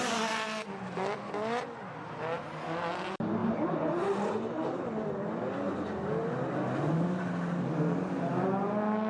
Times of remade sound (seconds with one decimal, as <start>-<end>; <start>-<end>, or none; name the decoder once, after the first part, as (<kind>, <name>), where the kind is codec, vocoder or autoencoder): none